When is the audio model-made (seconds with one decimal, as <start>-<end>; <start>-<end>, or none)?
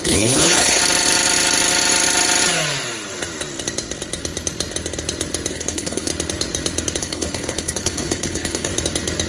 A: 0.0-0.8; 5.5-6.1; 7.0-8.7